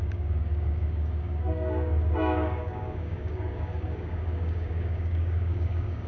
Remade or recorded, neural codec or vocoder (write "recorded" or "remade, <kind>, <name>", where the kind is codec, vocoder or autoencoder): remade, codec, DAC